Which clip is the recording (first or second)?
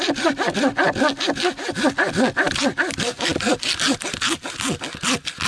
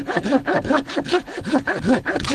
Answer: first